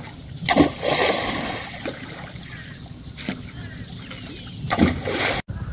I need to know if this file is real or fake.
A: real